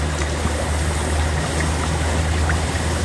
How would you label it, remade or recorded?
recorded